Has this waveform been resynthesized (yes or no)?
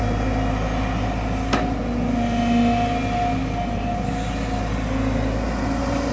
no